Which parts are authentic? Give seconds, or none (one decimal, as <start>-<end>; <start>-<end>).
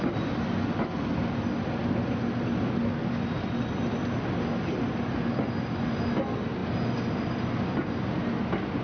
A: 0.0-8.8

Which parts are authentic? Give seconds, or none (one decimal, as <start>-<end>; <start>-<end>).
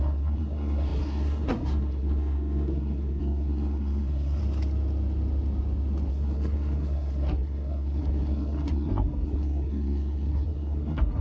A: 4.4-6.1